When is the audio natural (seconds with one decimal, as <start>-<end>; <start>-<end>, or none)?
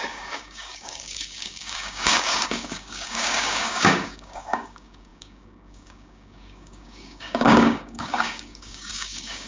none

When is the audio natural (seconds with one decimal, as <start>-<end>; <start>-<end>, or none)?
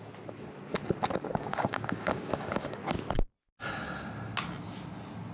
0.0-1.3; 2.8-5.3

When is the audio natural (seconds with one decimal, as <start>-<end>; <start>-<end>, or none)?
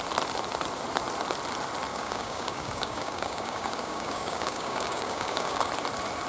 0.0-1.9; 5.7-6.3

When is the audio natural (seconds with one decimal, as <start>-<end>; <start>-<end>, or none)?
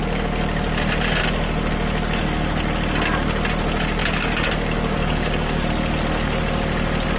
0.0-4.0; 5.6-7.2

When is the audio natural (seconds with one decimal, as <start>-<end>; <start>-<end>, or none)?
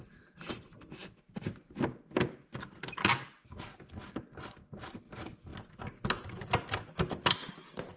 0.0-8.0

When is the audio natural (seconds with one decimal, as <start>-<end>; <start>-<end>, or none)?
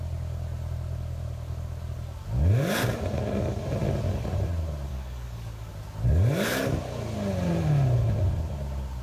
0.0-4.9; 5.7-9.0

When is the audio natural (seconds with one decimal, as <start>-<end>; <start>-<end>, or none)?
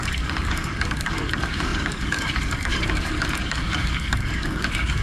none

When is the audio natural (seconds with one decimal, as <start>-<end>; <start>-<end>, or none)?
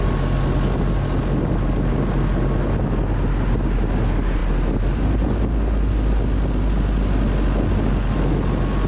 0.0-8.9